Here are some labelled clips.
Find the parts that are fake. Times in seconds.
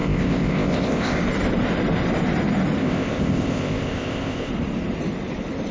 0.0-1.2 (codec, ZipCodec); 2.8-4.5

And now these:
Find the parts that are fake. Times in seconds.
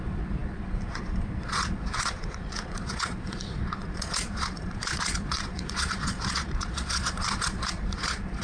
0.0-8.4 (vocoder, Vocos)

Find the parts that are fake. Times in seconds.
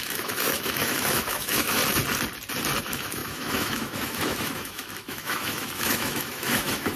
0.0-1.8 (autoencoder, DAC-VAE); 2.8-7.0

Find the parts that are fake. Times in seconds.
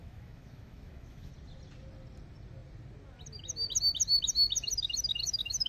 0.0-1.3 (autoencoder, DAC-VAE); 5.2-5.7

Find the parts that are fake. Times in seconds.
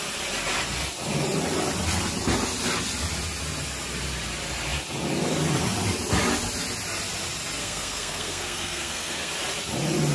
7.6-9.3 (codec, SNAC)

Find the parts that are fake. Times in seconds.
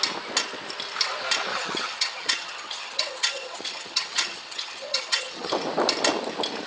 1.5-5.5 (vocoder, HiFi-GAN)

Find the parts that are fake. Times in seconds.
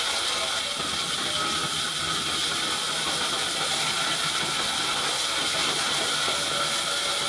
5.6-6.5 (vocoder, BigVGAN v2)